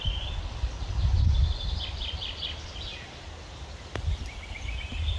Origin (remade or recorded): recorded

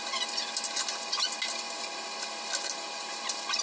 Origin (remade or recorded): recorded